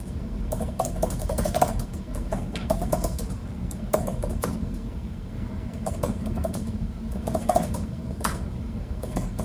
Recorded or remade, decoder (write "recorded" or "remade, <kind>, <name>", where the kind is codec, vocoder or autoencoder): remade, codec, SNAC